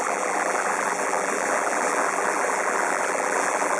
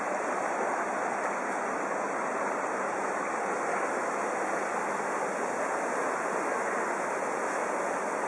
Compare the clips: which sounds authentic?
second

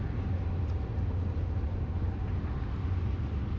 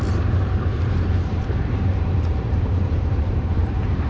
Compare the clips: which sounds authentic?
first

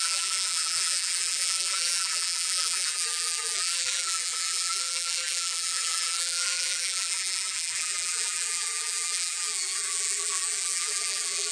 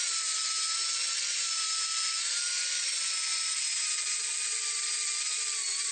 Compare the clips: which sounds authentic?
second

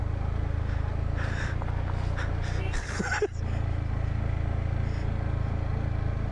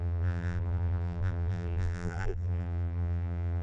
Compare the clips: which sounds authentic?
first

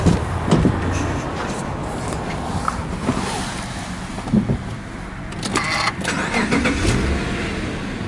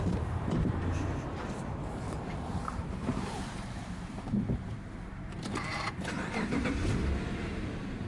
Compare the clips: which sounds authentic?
first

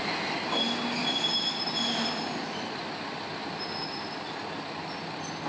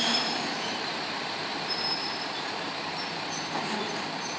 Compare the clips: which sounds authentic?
first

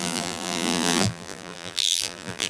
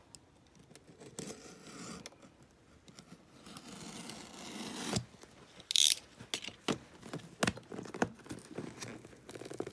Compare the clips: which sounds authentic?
second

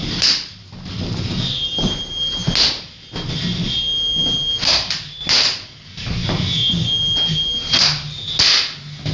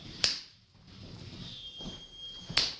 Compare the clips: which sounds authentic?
first